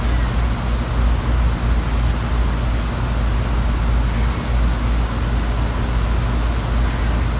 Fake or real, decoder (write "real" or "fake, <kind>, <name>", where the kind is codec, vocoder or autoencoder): real